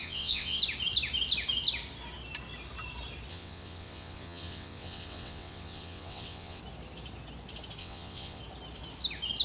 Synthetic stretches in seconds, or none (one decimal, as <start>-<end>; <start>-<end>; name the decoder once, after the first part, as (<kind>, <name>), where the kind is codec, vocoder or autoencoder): 0.0-0.6 (vocoder, WaveNeXt); 3.3-6.6; 7.8-8.4